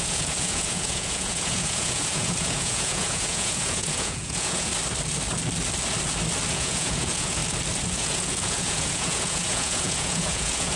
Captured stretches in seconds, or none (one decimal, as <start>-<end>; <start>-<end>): 4.7-6.5; 7.4-7.9